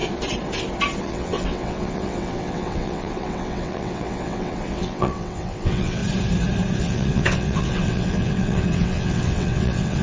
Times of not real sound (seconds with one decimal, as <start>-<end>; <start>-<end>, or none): 1.0-6.0; 6.8-10.0